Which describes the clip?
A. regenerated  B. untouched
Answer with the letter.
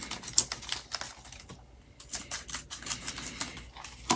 B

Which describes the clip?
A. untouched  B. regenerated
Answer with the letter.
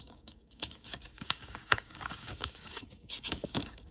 B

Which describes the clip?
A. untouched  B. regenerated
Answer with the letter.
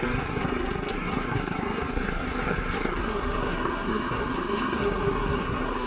B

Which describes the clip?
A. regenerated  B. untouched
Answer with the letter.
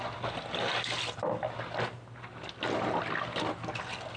B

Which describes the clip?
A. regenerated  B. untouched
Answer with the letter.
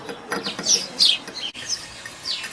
B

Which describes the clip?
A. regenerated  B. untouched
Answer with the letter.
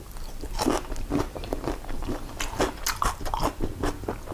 B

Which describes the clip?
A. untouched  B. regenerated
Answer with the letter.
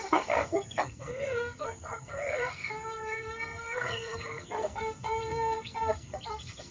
B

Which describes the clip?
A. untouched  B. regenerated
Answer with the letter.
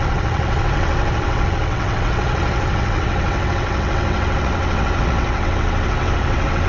B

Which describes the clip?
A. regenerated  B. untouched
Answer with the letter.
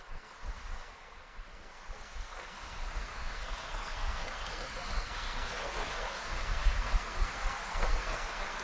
A